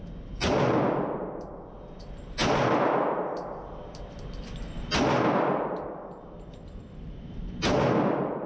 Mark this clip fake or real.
real